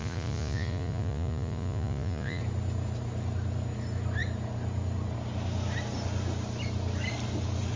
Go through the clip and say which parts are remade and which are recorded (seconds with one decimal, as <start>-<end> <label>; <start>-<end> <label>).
0.0-2.4 remade; 2.4-7.8 recorded